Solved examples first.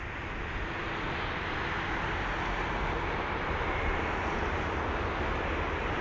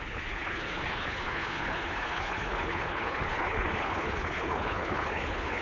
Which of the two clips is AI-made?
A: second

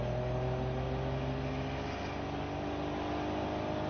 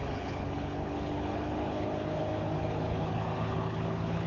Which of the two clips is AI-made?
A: second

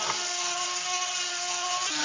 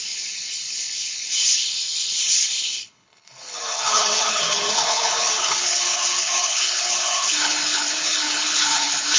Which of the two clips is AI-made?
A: second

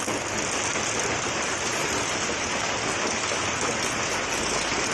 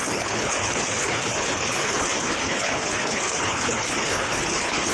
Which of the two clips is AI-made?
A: second